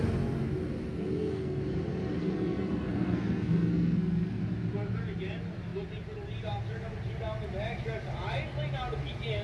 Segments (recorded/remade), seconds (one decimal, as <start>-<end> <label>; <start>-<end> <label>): 0.0-0.9 recorded; 0.9-1.6 remade; 1.6-2.2 recorded; 2.2-4.4 remade; 4.4-9.4 recorded